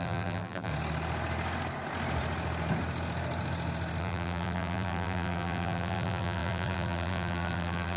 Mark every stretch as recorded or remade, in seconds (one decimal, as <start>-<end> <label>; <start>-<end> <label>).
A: 0.0-0.7 remade; 0.7-4.0 recorded; 4.0-8.0 remade